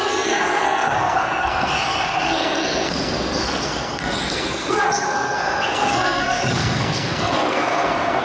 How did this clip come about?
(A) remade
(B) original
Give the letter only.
A